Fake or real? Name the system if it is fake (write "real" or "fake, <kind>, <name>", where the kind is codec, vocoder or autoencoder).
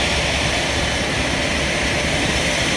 real